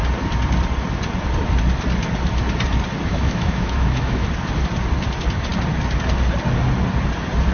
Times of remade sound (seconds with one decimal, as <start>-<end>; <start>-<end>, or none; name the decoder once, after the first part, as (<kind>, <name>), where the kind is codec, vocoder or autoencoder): 3.1-4.3 (autoencoder, DAC-VAE)